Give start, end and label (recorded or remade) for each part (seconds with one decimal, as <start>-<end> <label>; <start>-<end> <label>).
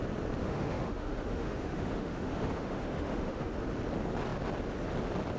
0.0-0.4 recorded; 0.4-3.6 remade; 3.6-5.4 recorded